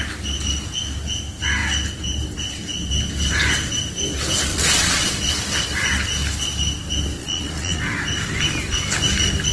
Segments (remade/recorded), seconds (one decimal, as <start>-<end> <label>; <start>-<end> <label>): 0.0-4.5 recorded; 4.5-5.1 remade; 5.1-7.2 recorded; 7.2-7.8 remade; 7.8-9.5 recorded